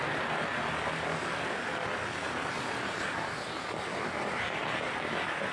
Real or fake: fake